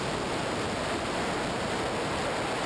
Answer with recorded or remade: recorded